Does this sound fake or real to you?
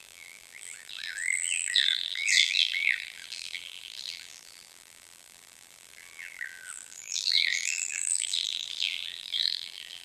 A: fake